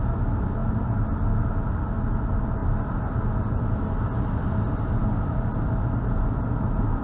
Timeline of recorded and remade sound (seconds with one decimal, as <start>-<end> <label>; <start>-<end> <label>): 0.0-7.0 recorded